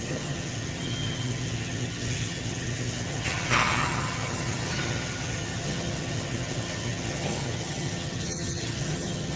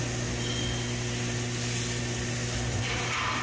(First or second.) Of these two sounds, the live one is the second